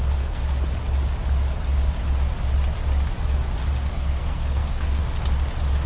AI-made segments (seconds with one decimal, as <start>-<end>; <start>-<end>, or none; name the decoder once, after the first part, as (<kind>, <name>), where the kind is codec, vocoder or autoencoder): 0.0-0.4 (codec, SNAC); 3.9-5.0